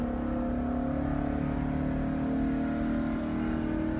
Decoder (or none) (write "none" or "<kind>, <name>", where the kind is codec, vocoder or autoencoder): none